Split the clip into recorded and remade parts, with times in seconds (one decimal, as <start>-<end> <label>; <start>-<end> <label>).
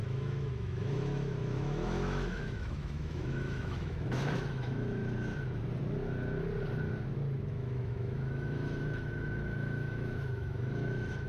0.0-5.0 remade; 5.0-7.5 recorded; 7.5-11.3 remade